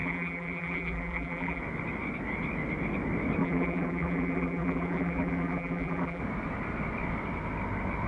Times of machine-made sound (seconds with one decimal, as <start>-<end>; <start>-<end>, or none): 0.0-1.6; 3.4-6.2